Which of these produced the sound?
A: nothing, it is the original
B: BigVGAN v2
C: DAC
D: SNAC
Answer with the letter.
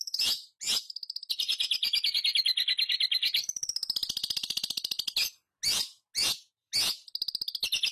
A